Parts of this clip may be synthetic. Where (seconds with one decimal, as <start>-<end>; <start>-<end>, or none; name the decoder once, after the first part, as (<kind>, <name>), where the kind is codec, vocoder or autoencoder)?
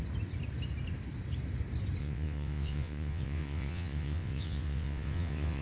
2.0-5.6 (vocoder, WaveNeXt)